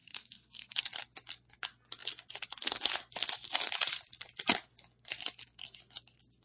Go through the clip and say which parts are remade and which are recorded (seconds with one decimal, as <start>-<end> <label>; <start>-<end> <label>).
0.0-0.8 remade; 0.8-6.4 recorded